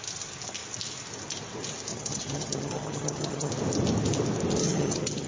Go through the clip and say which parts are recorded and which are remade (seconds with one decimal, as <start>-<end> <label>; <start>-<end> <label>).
0.0-1.9 recorded; 1.9-3.5 remade; 3.5-4.6 recorded; 4.6-5.3 remade